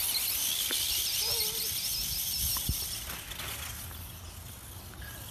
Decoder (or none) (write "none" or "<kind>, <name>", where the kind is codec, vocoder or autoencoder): none